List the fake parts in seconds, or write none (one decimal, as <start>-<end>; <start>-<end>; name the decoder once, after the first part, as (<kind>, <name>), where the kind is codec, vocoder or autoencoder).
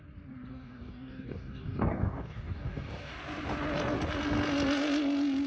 0.5-3.2 (codec, DAC)